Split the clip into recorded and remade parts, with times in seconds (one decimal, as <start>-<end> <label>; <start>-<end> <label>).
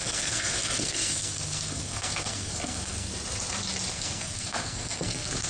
0.0-3.1 remade; 3.1-3.9 recorded; 3.9-5.5 remade